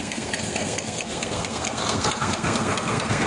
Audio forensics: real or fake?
fake